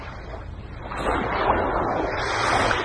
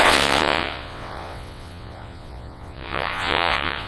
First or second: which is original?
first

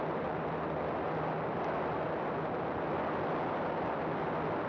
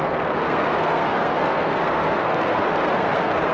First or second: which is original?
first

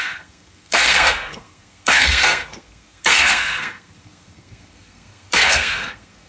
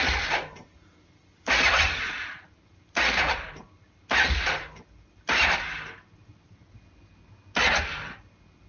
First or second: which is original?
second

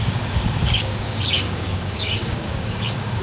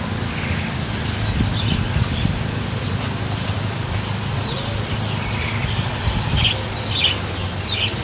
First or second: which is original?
second